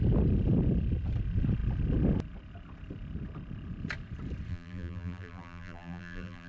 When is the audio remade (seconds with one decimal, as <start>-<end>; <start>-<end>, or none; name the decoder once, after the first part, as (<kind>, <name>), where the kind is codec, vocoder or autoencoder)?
4.5-6.5 (vocoder, BigVGAN v2)